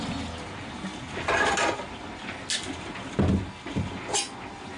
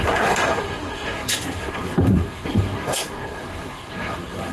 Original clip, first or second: first